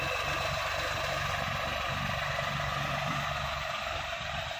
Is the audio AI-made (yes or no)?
no